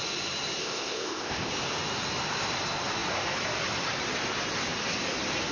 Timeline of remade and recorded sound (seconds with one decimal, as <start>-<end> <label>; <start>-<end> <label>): 0.0-0.6 recorded; 0.6-1.5 remade; 1.5-5.5 recorded